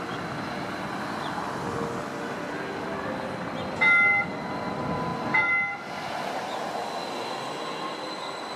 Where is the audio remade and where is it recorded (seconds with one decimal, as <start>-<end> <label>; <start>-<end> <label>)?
0.0-8.6 recorded